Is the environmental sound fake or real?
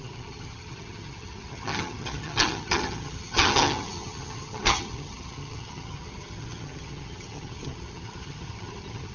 fake